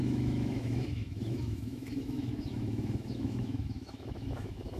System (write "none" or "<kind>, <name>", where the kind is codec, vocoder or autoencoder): autoencoder, DAC-VAE